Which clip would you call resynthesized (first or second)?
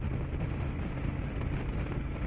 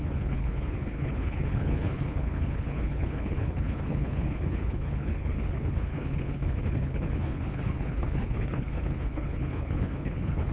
second